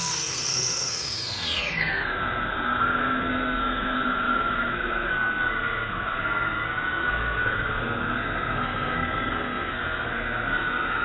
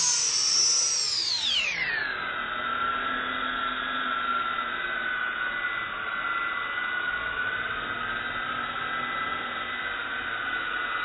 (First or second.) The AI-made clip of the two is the first